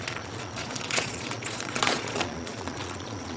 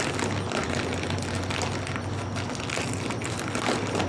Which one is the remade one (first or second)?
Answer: first